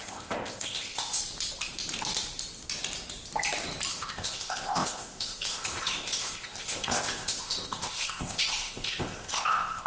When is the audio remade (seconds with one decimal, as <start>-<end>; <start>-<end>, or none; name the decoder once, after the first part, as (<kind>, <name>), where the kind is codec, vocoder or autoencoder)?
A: 0.0-1.2 (codec, ZipCodec); 3.9-9.9